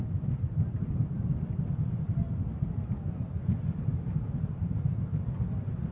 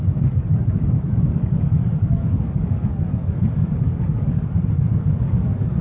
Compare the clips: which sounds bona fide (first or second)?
first